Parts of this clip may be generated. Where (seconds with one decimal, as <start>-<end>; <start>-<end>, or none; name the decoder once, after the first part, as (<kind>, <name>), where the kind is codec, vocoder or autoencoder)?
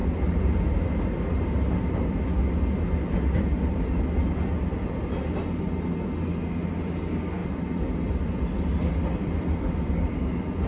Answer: 7.4-10.2 (vocoder, BigVGAN v2)